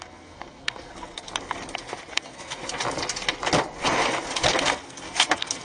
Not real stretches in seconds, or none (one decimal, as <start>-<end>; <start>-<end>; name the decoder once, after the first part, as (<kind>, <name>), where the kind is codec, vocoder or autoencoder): 0.0-1.3 (codec, SNAC); 2.1-2.6; 4.6-5.6